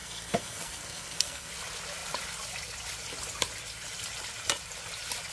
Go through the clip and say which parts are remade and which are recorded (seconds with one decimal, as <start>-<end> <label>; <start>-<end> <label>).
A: 0.0-1.5 remade; 1.5-5.3 recorded